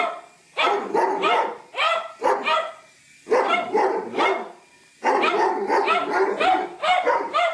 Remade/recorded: recorded